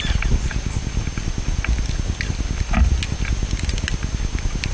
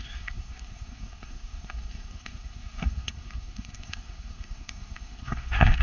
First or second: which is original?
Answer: first